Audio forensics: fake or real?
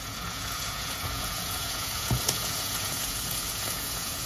fake